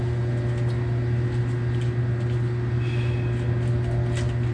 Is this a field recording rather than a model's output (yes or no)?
yes